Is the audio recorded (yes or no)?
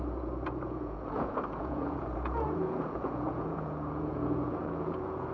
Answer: no